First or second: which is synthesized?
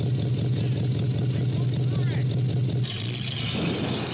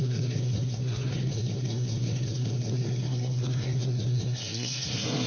second